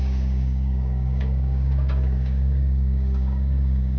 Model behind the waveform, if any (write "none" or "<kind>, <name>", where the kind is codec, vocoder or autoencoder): codec, DAC